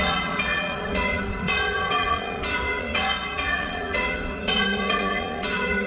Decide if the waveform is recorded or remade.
remade